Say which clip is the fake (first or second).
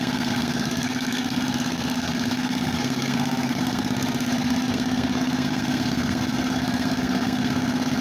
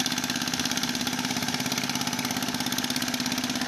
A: first